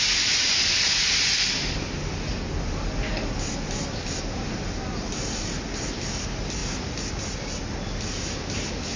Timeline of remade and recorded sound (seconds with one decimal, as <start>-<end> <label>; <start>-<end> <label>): 0.0-9.0 recorded